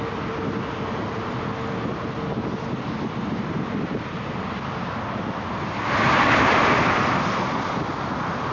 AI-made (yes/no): no